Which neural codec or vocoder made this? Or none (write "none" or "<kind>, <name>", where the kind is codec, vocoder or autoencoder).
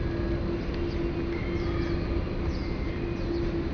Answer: none